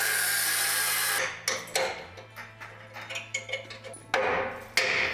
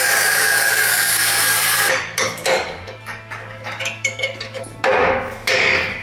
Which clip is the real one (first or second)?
first